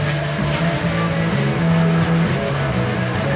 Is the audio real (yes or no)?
yes